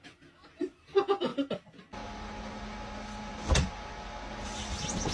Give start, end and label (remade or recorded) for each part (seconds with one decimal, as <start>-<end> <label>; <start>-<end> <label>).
0.0-5.1 recorded